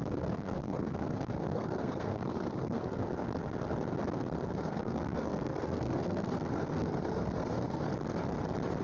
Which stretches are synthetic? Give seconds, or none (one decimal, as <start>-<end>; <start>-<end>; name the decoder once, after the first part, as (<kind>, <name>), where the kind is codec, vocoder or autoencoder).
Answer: 0.0-3.0 (codec, SNAC); 4.5-7.9